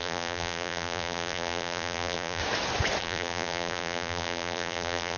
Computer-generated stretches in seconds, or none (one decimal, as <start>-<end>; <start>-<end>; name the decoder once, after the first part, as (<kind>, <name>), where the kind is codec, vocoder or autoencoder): 0.0-2.4 (vocoder, BigVGAN v2); 3.0-5.2